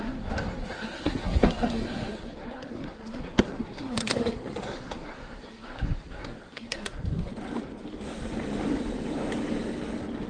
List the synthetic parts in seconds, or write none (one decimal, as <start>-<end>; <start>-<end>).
0.0-7.3